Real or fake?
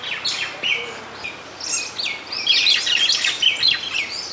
real